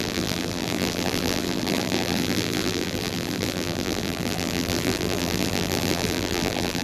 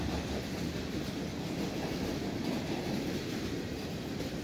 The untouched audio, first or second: second